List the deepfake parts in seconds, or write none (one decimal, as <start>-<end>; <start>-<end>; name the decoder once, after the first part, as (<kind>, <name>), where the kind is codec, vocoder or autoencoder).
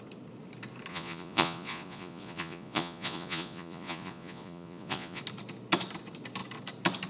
0.9-5.2 (vocoder, Vocos)